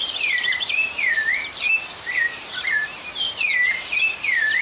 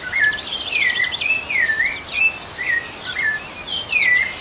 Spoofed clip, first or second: first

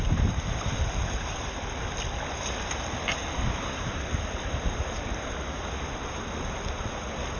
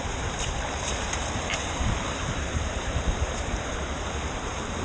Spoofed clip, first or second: second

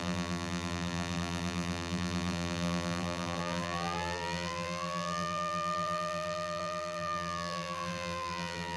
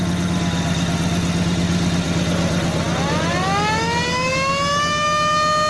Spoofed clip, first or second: first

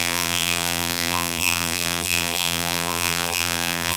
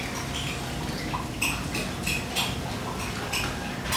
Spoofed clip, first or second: first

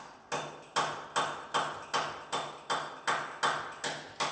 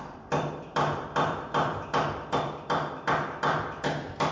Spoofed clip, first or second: second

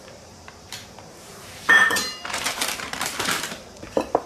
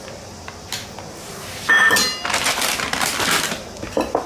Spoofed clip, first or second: first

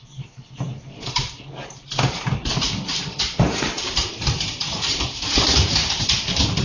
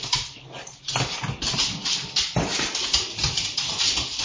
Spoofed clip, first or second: first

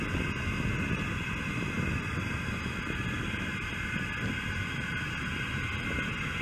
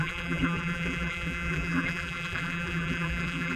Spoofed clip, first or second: second